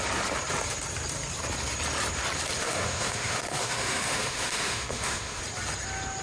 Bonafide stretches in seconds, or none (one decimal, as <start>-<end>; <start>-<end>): 0.0-2.6; 5.4-6.2